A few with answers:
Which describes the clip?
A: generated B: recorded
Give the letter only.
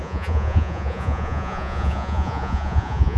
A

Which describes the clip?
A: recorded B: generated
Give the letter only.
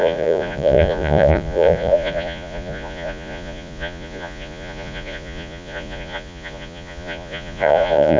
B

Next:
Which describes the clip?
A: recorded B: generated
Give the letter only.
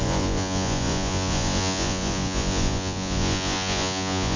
B